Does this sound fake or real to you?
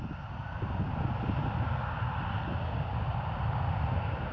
real